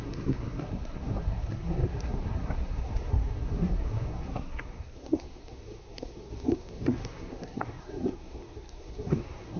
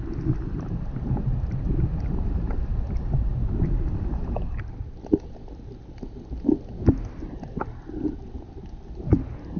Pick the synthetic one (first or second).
first